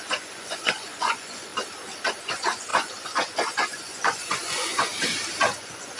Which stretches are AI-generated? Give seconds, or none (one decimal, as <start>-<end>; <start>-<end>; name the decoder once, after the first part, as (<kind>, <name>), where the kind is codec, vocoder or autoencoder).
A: 0.0-1.5 (vocoder, Vocos); 2.2-4.9; 5.4-6.0